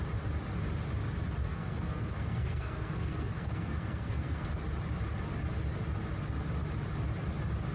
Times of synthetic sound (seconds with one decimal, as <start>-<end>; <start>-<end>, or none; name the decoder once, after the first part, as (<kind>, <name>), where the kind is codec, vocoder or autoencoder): 1.4-4.5 (codec, SNAC)